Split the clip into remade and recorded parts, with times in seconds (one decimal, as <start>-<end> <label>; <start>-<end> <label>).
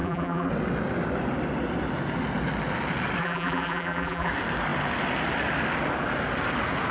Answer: 0.0-0.5 remade; 0.5-3.2 recorded; 3.2-4.3 remade; 4.3-6.9 recorded